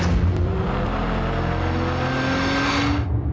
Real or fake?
real